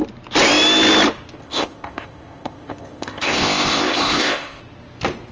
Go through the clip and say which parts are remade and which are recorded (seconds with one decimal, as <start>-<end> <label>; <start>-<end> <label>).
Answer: 0.0-1.4 recorded; 1.4-4.6 remade; 4.6-5.3 recorded